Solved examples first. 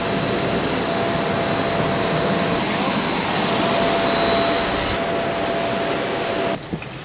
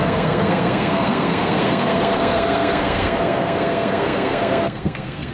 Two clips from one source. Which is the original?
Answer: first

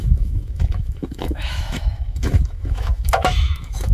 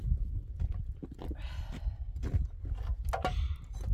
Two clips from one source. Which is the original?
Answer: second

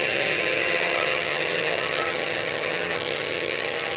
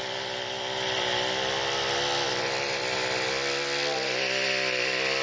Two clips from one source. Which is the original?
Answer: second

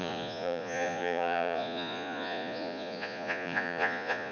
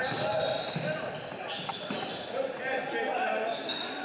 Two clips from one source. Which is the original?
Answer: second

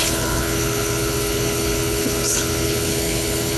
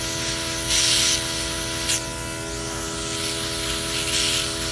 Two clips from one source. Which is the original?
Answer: second